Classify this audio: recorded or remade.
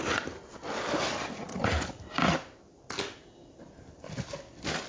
recorded